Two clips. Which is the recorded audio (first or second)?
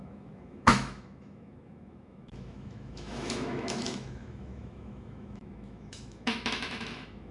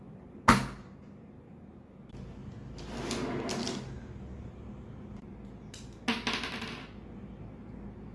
second